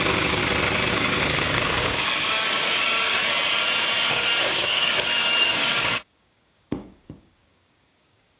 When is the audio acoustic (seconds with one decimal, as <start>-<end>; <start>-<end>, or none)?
0.4-0.9; 3.2-4.1